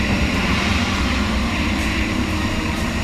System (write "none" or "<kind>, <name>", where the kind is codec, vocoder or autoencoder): vocoder, BigVGAN v2